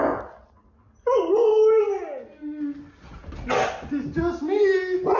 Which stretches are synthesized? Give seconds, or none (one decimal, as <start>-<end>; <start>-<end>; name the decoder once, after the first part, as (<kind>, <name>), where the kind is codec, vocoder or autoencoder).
none